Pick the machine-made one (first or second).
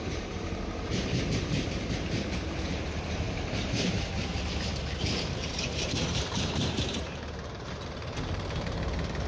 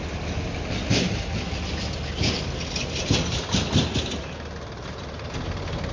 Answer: first